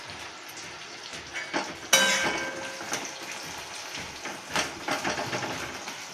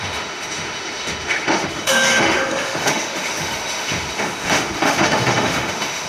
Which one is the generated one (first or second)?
second